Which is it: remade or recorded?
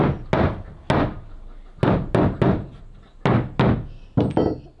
recorded